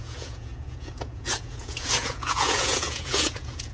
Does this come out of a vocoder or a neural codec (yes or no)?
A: yes